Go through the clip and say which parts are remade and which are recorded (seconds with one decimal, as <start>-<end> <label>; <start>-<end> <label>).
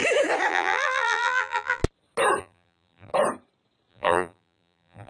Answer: 0.0-0.5 recorded; 0.5-1.8 remade; 1.8-2.4 recorded; 2.4-3.1 remade; 3.1-3.9 recorded; 3.9-5.1 remade